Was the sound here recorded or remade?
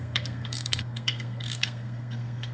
remade